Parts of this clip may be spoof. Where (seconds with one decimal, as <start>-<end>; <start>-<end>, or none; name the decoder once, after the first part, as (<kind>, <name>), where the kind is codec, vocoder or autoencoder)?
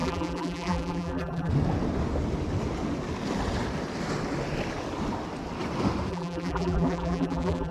0.0-1.5 (vocoder, BigVGAN v2); 6.1-7.7